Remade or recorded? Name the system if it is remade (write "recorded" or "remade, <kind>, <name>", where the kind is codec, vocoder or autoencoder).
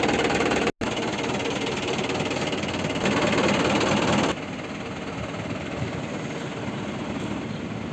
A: recorded